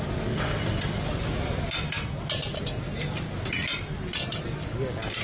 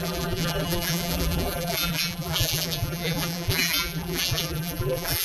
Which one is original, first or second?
first